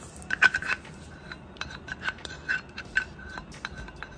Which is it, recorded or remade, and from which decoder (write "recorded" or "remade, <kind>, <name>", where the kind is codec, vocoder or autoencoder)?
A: recorded